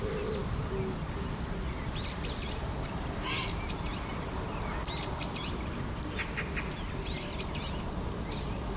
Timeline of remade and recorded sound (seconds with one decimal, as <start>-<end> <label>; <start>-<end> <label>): 0.0-8.8 recorded

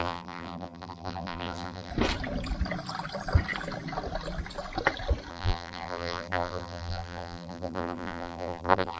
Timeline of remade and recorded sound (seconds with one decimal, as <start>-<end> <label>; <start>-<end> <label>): 0.0-1.9 remade; 1.9-5.3 recorded; 5.3-9.0 remade

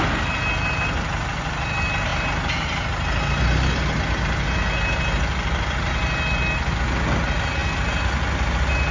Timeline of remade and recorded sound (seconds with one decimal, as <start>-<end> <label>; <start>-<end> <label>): 0.0-8.9 recorded